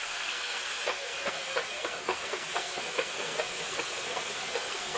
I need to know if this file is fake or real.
fake